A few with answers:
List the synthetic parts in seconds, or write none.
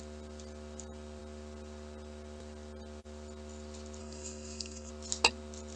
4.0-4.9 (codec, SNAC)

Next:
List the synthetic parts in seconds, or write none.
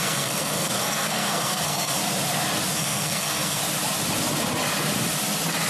0.0-2.0 (codec, SNAC); 2.7-3.6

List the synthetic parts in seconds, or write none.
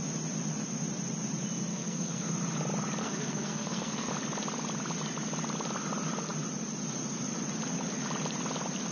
1.7-2.3 (codec, SNAC); 3.0-4.1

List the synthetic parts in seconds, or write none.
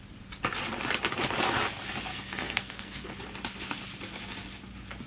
2.1-3.1 (codec, SNAC)